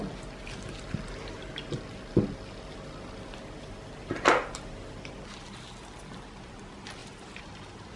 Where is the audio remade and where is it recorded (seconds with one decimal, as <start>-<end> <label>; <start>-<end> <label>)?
0.0-7.0 recorded; 7.0-8.0 remade